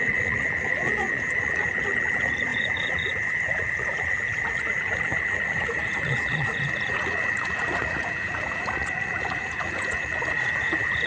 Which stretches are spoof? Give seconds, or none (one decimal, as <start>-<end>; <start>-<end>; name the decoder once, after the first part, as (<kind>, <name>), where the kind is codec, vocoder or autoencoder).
0.0-11.1 (vocoder, Vocos)